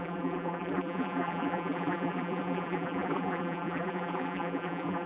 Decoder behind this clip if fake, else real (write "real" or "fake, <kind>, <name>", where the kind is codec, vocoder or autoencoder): fake, vocoder, BigVGAN v2